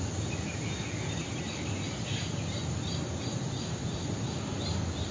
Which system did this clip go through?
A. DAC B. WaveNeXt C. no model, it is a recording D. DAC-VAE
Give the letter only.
C